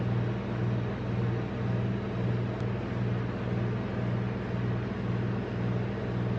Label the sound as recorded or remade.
recorded